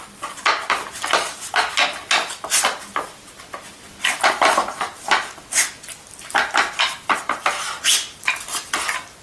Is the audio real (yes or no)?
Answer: yes